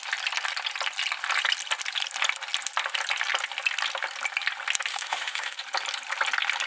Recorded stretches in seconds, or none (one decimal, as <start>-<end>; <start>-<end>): 0.0-4.9; 5.6-6.7